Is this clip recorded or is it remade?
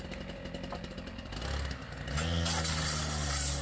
recorded